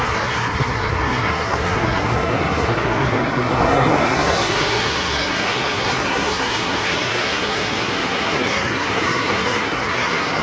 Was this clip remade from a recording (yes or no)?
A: yes